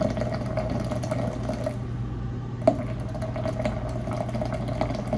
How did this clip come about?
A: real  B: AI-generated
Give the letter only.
A